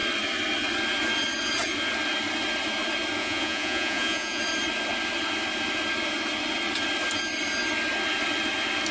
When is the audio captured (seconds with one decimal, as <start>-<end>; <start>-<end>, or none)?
0.0-3.2; 4.4-8.9